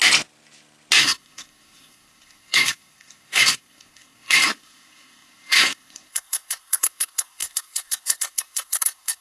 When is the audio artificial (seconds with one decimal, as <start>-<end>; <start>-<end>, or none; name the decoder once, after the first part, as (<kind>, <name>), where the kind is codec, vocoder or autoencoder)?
1.0-9.2 (codec, SNAC)